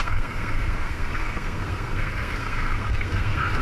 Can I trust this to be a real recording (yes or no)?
no